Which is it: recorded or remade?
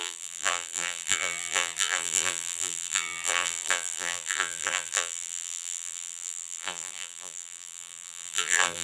remade